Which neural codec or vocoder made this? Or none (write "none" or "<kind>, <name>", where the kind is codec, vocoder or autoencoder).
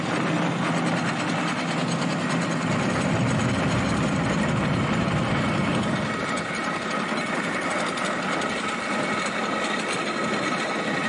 none